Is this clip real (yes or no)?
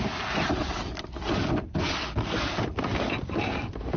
yes